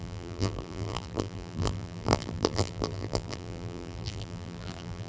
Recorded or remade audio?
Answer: remade